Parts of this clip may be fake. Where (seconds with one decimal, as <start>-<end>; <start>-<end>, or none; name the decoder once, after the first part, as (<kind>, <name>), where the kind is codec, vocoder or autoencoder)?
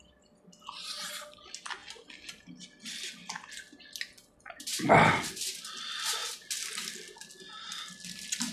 none